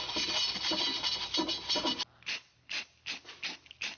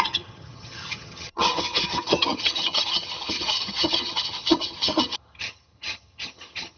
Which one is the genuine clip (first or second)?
first